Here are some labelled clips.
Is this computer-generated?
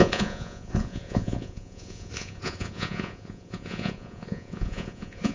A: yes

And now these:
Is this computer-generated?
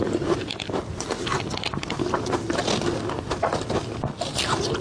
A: no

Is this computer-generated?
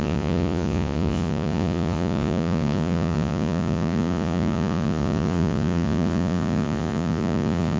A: yes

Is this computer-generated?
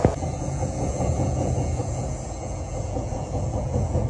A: yes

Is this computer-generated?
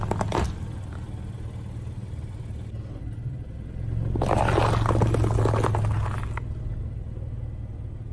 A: no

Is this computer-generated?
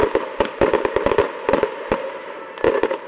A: no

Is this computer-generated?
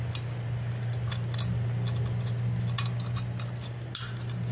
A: no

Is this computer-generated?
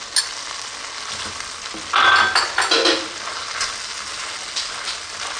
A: no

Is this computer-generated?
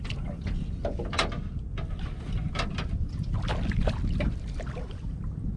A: no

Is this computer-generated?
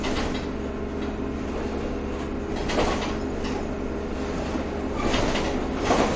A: no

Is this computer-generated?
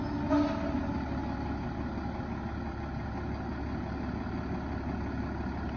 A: no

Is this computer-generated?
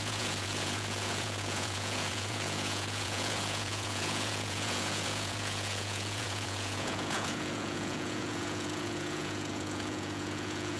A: yes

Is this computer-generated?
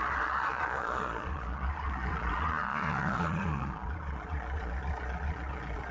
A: yes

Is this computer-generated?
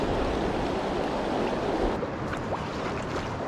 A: no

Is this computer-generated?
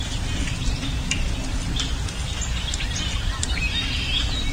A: no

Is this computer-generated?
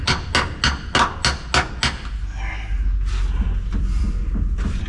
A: no